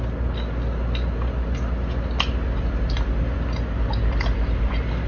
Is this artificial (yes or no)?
no